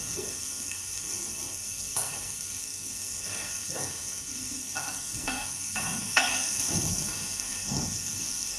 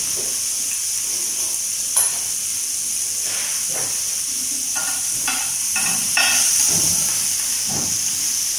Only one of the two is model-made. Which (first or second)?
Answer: first